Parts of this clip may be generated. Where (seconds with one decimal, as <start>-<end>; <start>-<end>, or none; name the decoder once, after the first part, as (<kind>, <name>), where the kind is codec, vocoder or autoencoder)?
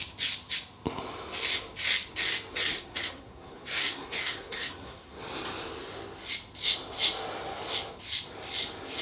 2.7-5.2 (codec, SNAC)